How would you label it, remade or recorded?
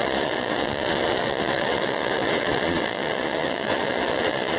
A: remade